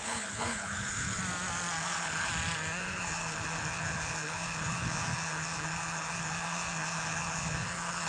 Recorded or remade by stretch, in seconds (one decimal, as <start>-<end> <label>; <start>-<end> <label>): 0.0-1.2 remade; 1.2-1.8 recorded; 1.8-2.3 remade; 2.3-2.8 recorded; 2.8-8.1 remade